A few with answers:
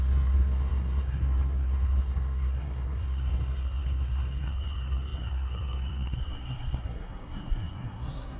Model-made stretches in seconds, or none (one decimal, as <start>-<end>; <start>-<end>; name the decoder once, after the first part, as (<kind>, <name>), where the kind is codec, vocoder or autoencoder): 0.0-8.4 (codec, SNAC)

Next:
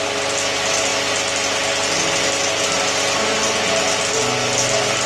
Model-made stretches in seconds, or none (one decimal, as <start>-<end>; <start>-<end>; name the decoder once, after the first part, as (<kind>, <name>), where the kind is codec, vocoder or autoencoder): none

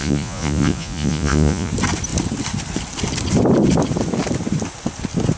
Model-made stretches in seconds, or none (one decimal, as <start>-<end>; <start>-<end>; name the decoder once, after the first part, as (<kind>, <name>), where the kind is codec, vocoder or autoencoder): 0.0-1.7 (vocoder, Vocos)

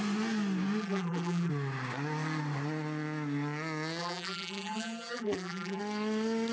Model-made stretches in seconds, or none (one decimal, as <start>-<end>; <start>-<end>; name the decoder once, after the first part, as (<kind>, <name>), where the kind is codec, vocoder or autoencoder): 0.8-1.5 (vocoder, BigVGAN v2); 4.0-5.8

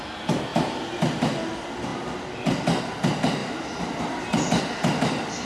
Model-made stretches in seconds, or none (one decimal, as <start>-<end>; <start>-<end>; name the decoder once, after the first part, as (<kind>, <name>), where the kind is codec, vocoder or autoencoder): 0.5-1.2 (vocoder, BigVGAN v2)

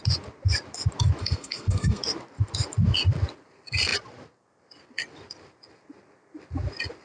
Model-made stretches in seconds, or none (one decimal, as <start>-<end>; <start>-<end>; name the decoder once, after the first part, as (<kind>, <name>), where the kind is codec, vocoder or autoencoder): 1.2-2.0 (codec, SNAC)